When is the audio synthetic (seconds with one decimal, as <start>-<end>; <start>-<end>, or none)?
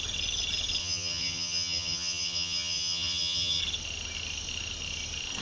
0.8-3.6